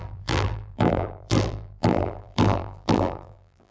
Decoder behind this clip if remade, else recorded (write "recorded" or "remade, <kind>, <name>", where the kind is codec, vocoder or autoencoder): remade, vocoder, BigVGAN v2